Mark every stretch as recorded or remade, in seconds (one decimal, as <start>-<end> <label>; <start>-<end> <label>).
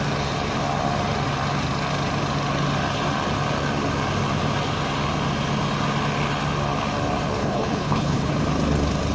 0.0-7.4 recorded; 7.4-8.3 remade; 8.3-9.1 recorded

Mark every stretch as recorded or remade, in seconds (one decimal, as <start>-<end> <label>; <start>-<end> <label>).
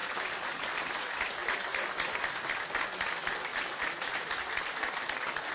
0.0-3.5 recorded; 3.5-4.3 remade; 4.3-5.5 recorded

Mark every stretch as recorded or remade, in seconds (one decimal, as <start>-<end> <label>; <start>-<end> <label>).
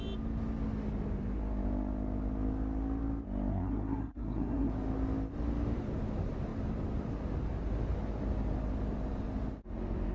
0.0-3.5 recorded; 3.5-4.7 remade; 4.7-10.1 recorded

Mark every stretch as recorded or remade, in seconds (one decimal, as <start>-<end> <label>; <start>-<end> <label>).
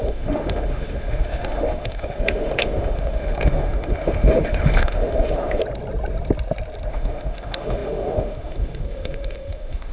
0.0-5.6 remade; 5.6-6.9 recorded; 6.9-9.9 remade